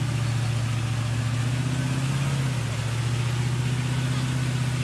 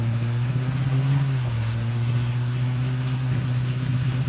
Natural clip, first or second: first